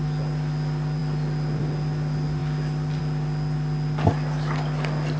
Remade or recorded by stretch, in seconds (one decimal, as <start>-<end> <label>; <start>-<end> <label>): 0.0-5.2 recorded